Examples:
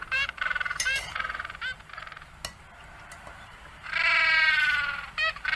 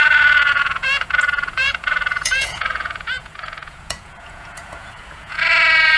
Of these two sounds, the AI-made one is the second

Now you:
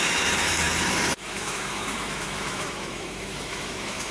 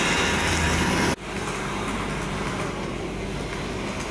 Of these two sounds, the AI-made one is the first